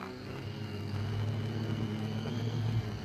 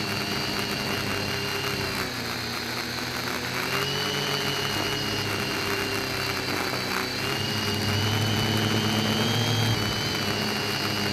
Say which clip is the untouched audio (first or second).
second